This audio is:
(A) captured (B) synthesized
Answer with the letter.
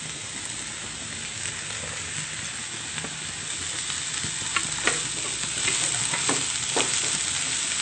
A